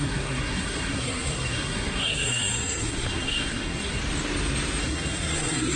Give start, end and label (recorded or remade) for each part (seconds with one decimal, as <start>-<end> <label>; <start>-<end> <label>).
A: 0.0-4.0 remade; 4.0-4.8 recorded; 4.8-5.8 remade